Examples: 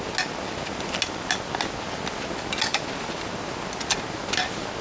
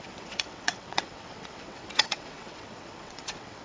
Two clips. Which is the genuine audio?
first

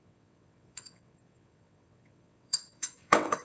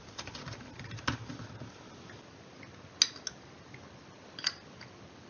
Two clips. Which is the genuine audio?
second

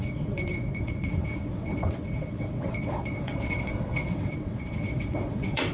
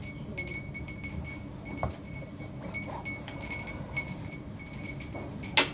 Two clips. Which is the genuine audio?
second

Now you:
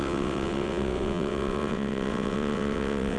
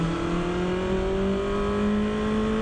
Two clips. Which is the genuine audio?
second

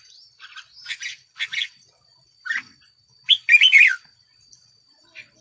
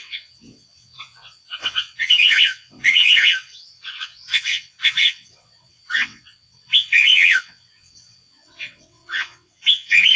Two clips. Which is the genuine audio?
first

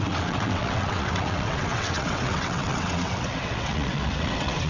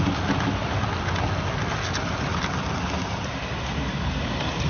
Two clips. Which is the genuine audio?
second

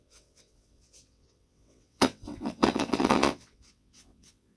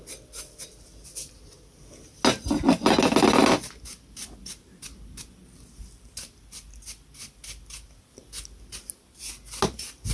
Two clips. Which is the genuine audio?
second